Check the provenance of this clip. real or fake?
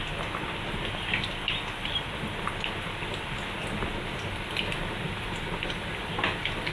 real